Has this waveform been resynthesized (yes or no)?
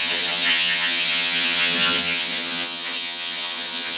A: yes